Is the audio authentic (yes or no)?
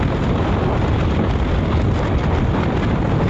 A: yes